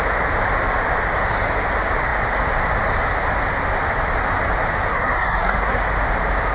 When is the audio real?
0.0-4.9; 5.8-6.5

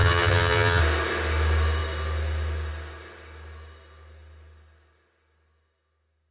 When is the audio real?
0.8-6.3

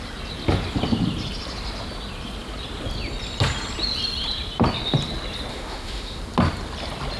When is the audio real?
0.0-5.5; 6.2-7.2

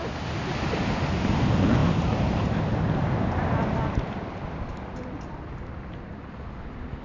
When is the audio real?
0.0-7.0

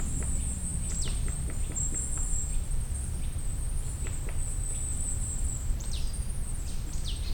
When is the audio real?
0.0-4.9; 6.0-7.3